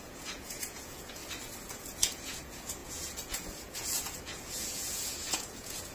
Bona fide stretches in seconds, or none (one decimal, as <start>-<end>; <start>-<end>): 1.2-1.7